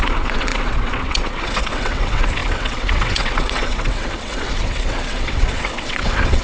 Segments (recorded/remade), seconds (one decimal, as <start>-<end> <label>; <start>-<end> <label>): 0.0-6.4 remade